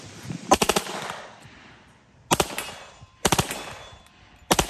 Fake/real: fake